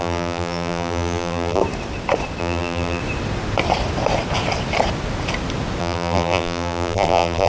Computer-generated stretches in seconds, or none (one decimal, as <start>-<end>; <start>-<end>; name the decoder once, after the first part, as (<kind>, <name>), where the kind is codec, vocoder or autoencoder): 0.0-1.6 (vocoder, BigVGAN v2); 2.4-3.0; 5.8-7.5